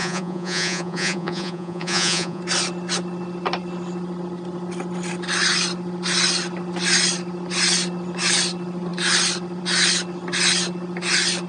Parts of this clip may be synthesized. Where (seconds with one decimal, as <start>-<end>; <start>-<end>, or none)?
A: 0.0-2.4